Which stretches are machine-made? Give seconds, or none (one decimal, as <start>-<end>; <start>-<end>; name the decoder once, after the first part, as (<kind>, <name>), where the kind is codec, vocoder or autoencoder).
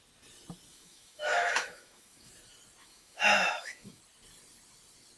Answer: 0.7-2.3 (autoencoder, DAC-VAE); 2.8-4.0